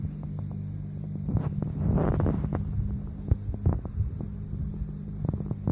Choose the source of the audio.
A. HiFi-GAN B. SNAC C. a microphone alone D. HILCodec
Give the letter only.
C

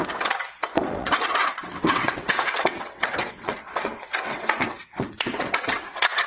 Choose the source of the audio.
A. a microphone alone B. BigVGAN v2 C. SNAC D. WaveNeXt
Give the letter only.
D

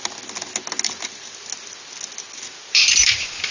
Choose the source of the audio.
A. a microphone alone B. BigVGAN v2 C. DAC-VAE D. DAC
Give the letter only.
A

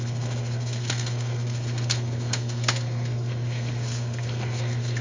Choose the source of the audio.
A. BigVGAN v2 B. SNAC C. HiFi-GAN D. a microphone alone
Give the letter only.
B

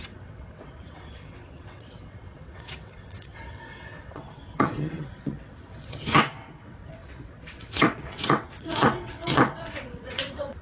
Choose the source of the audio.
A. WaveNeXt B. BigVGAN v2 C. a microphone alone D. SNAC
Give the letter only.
A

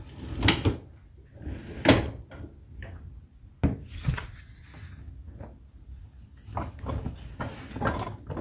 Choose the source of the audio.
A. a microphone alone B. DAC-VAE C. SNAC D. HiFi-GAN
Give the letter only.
A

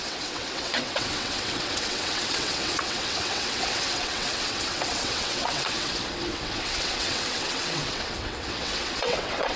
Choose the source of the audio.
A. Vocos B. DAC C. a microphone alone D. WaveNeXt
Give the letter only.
D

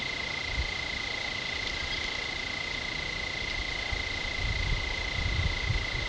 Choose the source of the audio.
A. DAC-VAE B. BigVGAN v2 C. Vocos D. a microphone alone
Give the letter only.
D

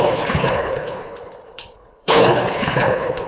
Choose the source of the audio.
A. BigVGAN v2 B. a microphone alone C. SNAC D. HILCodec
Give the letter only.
D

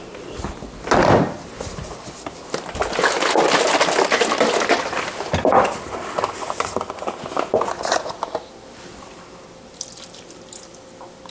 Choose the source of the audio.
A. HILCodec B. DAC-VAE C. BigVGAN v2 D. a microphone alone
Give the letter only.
D